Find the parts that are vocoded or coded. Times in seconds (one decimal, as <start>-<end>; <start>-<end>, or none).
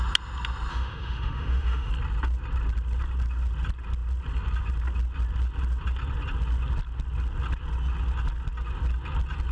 0.7-1.9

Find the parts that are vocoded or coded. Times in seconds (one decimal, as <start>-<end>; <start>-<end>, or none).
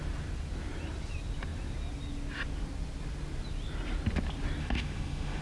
4.6-5.4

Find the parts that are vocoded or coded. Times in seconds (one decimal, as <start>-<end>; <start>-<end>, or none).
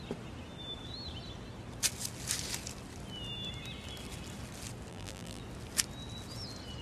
4.9-5.4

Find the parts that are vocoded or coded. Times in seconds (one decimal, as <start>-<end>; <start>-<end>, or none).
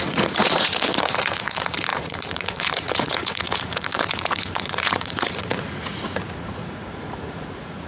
0.0-7.9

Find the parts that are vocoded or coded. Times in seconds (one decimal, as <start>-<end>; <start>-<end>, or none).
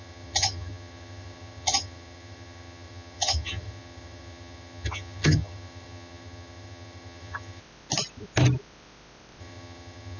0.0-7.6; 9.4-10.2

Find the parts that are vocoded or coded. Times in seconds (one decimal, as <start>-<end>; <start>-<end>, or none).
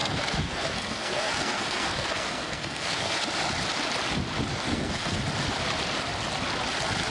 0.0-3.2; 4.5-5.2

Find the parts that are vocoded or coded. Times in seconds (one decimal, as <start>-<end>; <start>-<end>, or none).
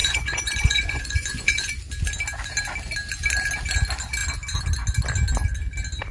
0.0-1.8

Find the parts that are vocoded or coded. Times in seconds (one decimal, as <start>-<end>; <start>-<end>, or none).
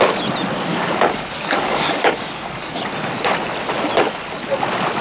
0.7-2.8